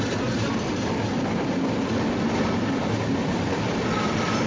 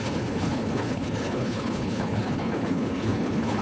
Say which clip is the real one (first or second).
first